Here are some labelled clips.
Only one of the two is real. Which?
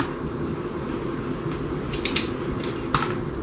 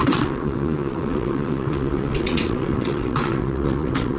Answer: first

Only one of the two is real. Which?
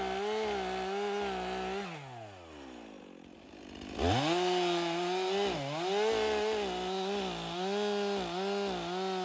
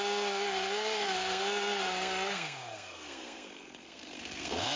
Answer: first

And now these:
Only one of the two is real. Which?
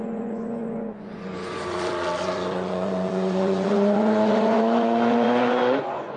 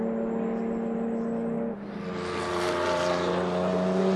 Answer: second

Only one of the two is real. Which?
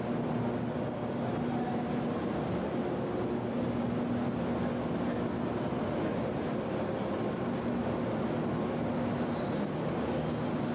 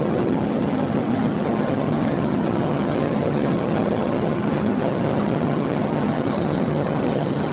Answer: first